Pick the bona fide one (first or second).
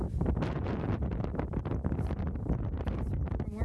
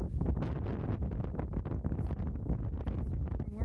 second